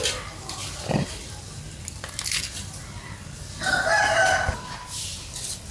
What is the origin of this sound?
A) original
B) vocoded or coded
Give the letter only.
A